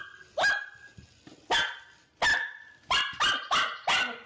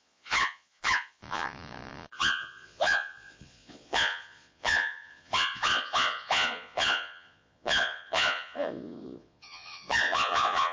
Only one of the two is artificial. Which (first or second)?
second